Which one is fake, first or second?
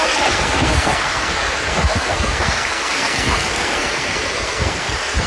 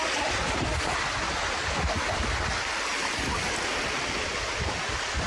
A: first